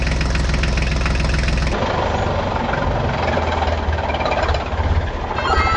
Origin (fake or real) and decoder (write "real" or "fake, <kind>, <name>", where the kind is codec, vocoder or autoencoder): real